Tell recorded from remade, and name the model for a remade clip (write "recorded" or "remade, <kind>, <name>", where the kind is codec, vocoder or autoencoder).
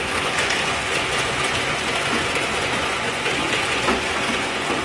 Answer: remade, vocoder, Vocos